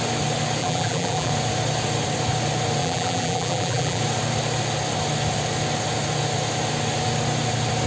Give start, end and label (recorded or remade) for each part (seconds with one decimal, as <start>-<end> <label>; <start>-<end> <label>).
0.0-0.6 recorded; 0.6-1.3 remade; 1.3-2.8 recorded; 2.8-4.0 remade; 4.0-7.9 recorded

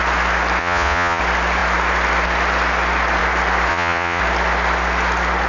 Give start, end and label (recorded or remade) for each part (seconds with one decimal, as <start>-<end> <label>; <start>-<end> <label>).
0.0-0.6 recorded; 0.6-1.2 remade; 1.2-3.7 recorded; 3.7-4.2 remade; 4.2-5.5 recorded

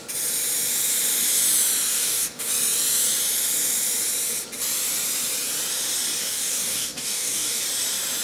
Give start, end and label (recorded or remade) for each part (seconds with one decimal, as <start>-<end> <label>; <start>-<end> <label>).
0.0-1.9 recorded; 1.9-2.5 remade; 2.5-6.2 recorded; 6.2-7.6 remade; 7.6-8.2 recorded